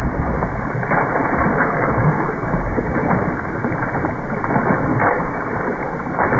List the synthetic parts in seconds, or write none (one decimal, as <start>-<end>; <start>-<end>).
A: 1.5-3.1; 4.9-5.5